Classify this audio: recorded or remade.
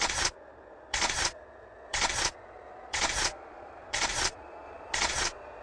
remade